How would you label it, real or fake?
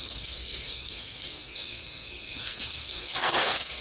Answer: fake